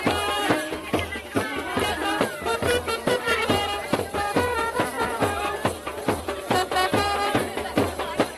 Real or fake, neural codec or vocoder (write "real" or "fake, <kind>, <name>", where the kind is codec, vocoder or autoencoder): fake, vocoder, BigVGAN v2